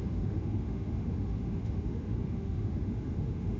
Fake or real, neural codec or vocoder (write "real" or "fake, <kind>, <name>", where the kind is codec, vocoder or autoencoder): fake, autoencoder, DAC-VAE